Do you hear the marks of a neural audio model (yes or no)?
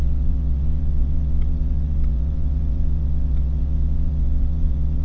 yes